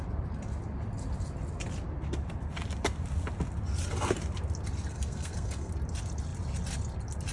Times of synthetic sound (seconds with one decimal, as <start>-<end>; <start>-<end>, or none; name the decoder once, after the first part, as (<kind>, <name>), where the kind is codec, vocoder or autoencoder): 4.9-5.7 (codec, SNAC)

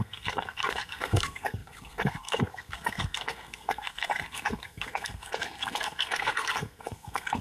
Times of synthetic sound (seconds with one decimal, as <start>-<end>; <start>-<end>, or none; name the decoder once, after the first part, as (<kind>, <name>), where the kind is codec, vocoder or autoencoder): 0.0-7.4 (codec, SNAC)

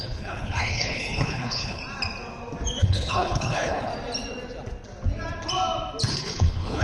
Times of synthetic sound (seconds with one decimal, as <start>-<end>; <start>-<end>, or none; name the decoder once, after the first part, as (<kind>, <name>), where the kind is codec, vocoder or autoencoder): 0.0-1.8 (codec, HILCodec); 2.8-3.9; 6.1-6.8